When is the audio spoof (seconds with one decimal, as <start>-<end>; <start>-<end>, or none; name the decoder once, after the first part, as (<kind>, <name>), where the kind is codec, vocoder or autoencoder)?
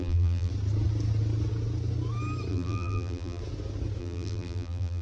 0.0-0.5 (vocoder, BigVGAN v2); 2.5-3.4; 4.0-5.0